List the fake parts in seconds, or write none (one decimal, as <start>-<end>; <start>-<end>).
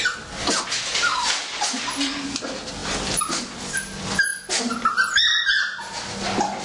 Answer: none